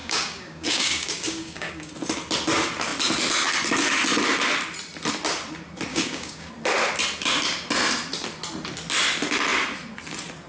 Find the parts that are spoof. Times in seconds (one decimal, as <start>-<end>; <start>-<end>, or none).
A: 0.0-1.9; 5.9-6.5